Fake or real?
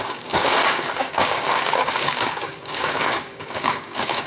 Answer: fake